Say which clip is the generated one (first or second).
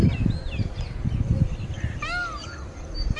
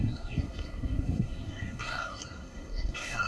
second